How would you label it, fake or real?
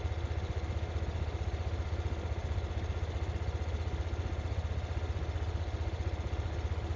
real